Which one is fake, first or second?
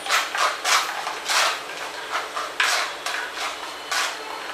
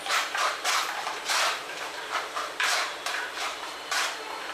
second